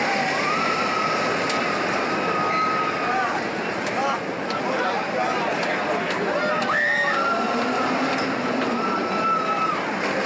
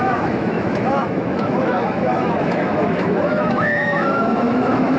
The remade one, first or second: second